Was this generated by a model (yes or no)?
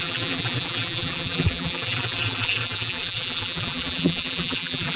yes